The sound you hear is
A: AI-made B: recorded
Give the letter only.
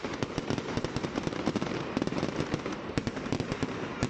A